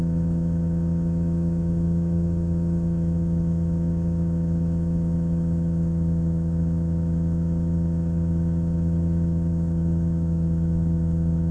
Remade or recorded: remade